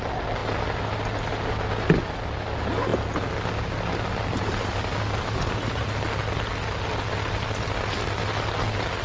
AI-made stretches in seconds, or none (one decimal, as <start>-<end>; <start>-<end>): none